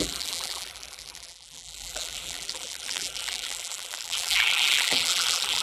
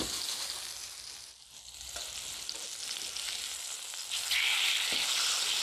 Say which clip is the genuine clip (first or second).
second